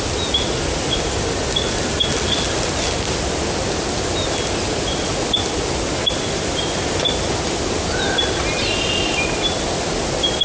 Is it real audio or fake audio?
real